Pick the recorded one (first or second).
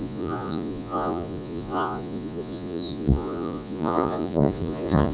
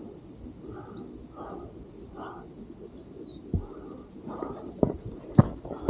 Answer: second